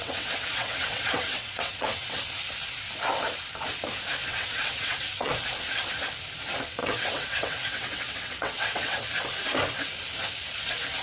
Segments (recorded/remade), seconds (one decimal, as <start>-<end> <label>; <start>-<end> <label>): 0.0-2.2 remade; 2.2-4.3 recorded; 4.3-5.3 remade; 5.3-6.8 recorded; 6.8-9.0 remade; 9.0-11.0 recorded